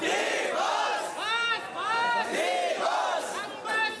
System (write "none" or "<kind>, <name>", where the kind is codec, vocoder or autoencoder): none